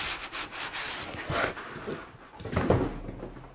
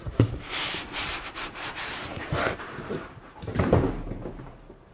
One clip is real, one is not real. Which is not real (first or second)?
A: second